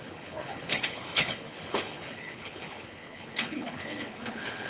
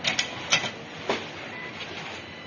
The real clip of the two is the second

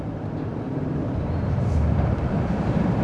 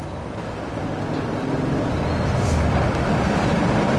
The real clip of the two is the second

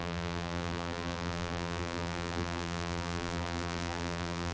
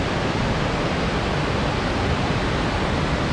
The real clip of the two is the second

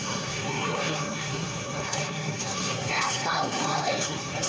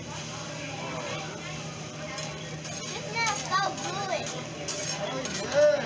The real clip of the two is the second